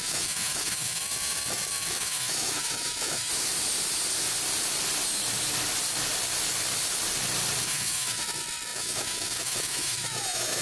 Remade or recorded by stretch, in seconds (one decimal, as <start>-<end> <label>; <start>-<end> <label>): 0.0-3.3 remade; 3.3-7.6 recorded; 7.6-10.6 remade